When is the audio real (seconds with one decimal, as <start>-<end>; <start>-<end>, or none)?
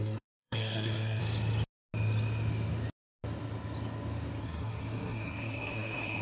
1.2-4.4